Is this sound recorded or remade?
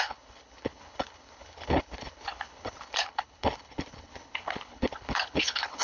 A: remade